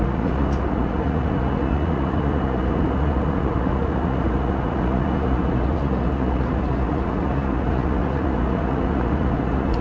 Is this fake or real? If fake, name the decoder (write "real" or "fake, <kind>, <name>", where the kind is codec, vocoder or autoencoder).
fake, vocoder, Vocos